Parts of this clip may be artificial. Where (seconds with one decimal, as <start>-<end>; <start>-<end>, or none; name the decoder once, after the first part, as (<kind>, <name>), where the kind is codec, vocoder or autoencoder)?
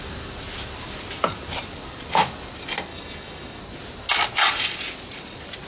2.9-3.6 (autoencoder, DAC-VAE)